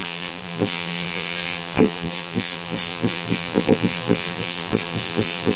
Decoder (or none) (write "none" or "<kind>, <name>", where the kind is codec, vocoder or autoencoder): vocoder, BigVGAN v2